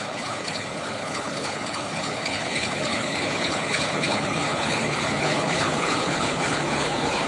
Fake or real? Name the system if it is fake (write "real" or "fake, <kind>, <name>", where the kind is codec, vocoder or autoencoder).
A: fake, codec, HILCodec